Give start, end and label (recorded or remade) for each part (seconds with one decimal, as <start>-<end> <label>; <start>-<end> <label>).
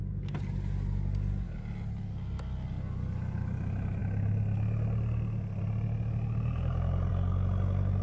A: 0.0-8.0 recorded